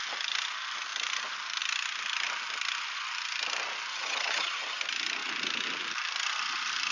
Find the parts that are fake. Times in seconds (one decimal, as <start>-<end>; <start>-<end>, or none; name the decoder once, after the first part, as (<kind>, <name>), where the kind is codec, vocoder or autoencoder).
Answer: 3.9-4.8 (vocoder, HiFi-GAN)